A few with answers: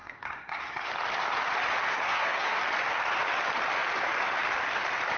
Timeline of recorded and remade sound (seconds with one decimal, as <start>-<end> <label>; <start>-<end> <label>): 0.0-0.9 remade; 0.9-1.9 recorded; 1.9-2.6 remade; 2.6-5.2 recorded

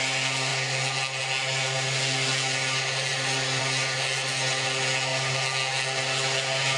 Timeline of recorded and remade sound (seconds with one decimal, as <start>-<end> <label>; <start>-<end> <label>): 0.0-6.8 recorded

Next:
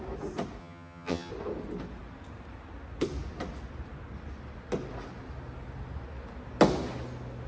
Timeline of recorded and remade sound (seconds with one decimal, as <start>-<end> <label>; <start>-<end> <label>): 0.0-0.6 recorded; 0.6-1.3 remade; 1.3-7.5 recorded

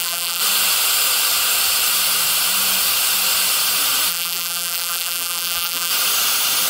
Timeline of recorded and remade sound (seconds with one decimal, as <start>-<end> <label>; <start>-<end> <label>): 0.0-0.4 remade; 0.4-4.1 recorded; 4.1-5.9 remade; 5.9-6.7 recorded

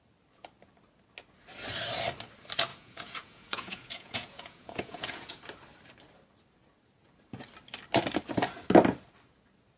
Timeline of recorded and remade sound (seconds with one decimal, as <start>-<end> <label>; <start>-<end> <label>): 0.0-2.7 recorded; 2.7-5.4 remade; 5.4-9.8 recorded

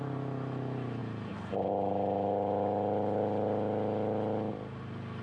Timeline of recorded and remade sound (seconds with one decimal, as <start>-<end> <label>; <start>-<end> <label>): 0.0-1.0 recorded; 1.0-1.7 remade; 1.7-5.2 recorded

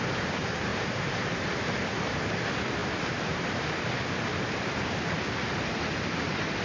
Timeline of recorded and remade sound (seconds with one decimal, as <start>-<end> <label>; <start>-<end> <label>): 0.0-0.7 recorded; 0.7-1.7 remade; 1.7-6.6 recorded

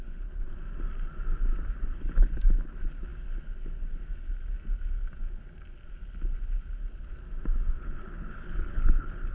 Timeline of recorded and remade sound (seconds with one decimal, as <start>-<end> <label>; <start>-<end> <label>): 0.0-0.5 remade; 0.5-1.7 recorded; 1.7-3.1 remade; 3.1-7.8 recorded; 7.8-9.3 remade